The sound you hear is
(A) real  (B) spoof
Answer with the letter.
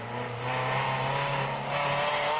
A